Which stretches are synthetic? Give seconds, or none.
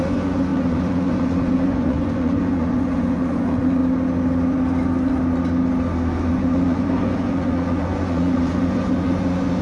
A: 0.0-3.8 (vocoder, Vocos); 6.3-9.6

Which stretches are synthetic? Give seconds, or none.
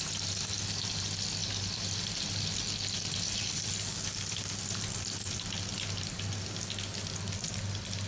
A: none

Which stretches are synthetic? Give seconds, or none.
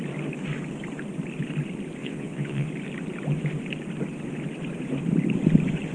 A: 2.0-2.7 (vocoder, Vocos)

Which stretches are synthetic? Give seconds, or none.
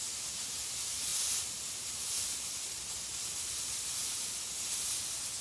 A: none